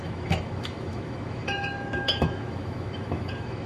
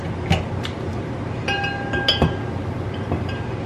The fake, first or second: first